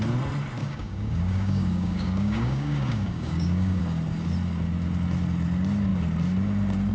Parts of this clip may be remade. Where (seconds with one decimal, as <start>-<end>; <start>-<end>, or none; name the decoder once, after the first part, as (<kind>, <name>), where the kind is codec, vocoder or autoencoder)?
0.6-3.8 (codec, DAC)